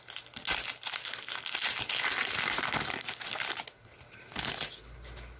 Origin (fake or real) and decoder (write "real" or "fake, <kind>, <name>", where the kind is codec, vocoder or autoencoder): real